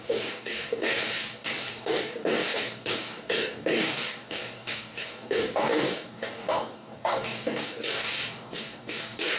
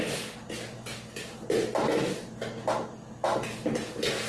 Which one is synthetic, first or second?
first